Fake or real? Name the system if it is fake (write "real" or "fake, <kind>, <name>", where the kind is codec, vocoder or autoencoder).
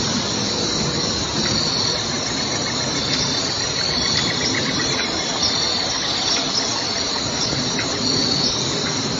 real